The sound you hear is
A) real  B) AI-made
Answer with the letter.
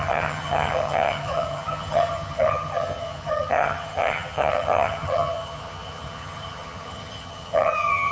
B